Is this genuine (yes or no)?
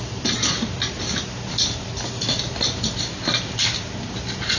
yes